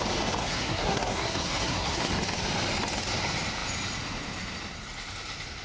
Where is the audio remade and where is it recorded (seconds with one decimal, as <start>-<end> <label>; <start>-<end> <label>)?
0.0-0.4 recorded; 0.4-2.1 remade; 2.1-5.6 recorded